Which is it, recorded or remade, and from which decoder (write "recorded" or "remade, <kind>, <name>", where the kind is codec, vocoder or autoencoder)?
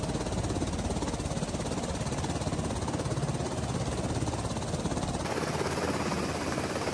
recorded